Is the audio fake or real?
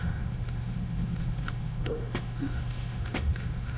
fake